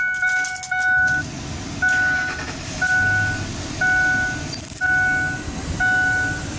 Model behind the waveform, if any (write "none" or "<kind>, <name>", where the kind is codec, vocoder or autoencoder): none